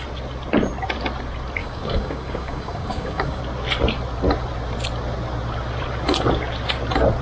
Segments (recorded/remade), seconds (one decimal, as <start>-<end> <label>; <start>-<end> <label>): 0.0-1.6 recorded; 1.6-3.4 remade; 3.4-7.2 recorded